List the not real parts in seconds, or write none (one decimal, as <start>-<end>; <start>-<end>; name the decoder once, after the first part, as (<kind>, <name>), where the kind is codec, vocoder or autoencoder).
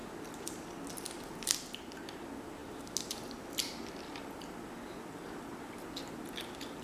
none